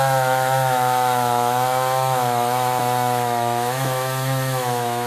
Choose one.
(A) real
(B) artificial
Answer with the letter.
B